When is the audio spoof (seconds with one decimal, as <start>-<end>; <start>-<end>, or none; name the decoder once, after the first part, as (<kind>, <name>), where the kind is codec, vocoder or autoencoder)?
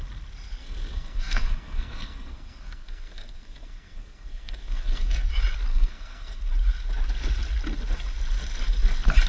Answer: 0.6-5.3 (codec, SNAC); 5.7-6.4